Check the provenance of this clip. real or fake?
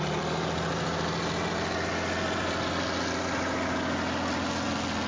real